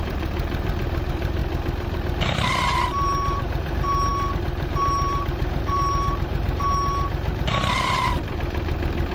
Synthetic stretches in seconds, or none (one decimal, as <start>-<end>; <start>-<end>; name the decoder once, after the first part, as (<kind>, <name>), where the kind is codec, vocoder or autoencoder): 0.0-1.4 (vocoder, BigVGAN v2); 2.1-9.1